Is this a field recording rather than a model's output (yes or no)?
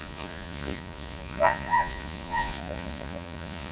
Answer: no